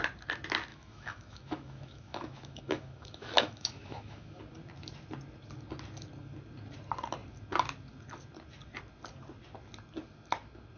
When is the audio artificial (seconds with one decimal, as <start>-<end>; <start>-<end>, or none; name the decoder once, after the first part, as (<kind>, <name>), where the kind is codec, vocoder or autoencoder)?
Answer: 0.7-4.4 (autoencoder, DAC-VAE)